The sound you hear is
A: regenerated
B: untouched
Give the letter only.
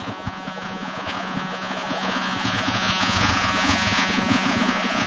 A